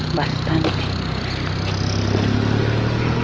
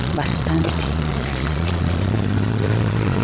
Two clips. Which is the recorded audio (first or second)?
first